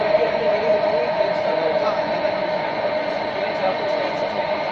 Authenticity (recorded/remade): remade